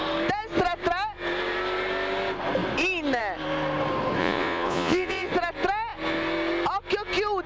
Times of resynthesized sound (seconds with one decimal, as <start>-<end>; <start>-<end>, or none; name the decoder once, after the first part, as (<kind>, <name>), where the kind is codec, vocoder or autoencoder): 4.2-5.3 (vocoder, Vocos)